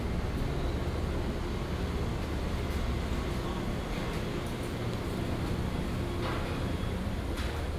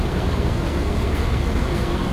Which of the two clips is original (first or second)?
first